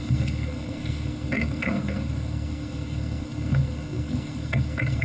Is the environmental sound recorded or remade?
remade